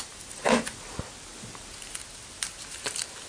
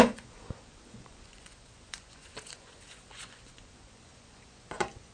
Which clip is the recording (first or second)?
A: first